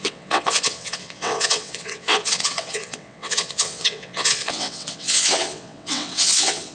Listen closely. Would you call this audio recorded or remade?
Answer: remade